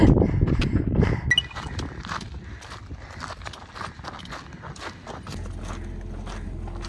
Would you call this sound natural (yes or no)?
yes